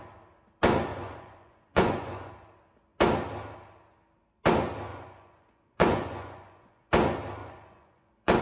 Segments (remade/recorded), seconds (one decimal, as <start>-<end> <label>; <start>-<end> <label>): 0.0-0.9 recorded; 0.9-2.3 remade; 2.3-4.9 recorded; 4.9-6.9 remade; 6.9-7.4 recorded; 7.4-8.4 remade

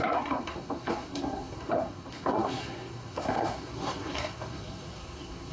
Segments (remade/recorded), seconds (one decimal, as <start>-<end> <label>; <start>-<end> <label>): 0.0-5.5 remade

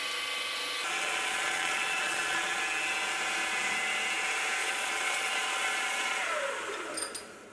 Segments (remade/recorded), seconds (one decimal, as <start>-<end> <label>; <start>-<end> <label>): 0.0-0.8 recorded; 0.8-2.6 remade; 2.6-4.6 recorded; 4.6-6.2 remade; 6.2-7.5 recorded

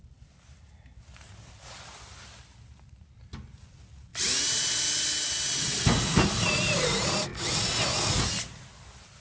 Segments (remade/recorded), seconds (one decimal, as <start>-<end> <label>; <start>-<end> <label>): 0.0-9.2 recorded

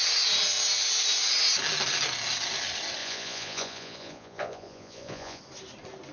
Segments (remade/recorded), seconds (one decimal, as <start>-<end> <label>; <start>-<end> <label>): 0.0-3.0 recorded; 3.0-5.4 remade; 5.4-6.1 recorded

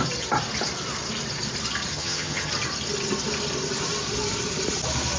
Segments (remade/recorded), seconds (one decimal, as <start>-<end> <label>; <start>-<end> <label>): 0.0-1.9 recorded; 1.9-2.5 remade; 2.5-5.2 recorded

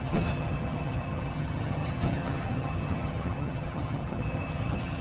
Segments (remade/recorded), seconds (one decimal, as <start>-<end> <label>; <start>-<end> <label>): 0.0-5.0 remade